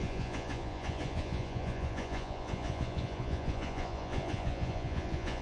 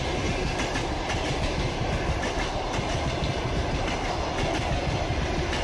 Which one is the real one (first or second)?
second